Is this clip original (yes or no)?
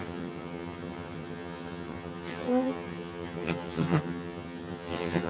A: no